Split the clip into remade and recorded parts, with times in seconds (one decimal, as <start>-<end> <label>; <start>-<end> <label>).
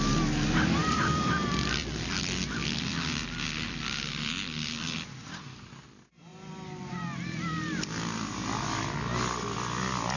0.0-0.8 recorded; 0.8-2.2 remade; 2.2-6.3 recorded; 6.3-8.7 remade; 8.7-10.2 recorded